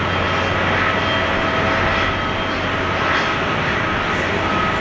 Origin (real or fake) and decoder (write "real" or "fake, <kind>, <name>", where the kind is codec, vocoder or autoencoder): real